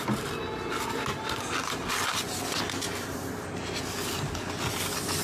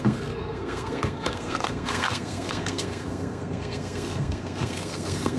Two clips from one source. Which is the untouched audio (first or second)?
first